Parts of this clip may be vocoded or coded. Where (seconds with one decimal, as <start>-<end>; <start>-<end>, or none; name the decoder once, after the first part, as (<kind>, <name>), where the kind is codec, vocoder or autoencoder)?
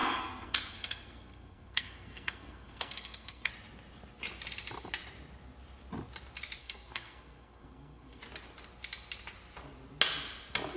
0.0-3.5 (codec, SNAC); 6.6-8.2